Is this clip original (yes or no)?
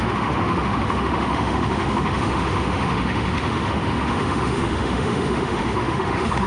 no